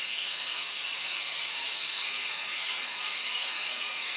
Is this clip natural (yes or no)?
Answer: no